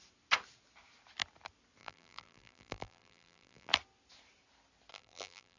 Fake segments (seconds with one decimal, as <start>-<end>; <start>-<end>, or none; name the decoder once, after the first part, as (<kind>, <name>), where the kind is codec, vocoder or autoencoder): 1.8-3.7 (vocoder, BigVGAN v2); 4.9-5.6